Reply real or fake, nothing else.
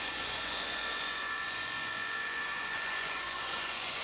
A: fake